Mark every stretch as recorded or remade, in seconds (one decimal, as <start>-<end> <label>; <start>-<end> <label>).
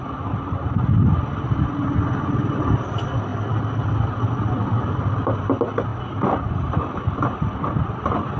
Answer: 0.0-8.4 recorded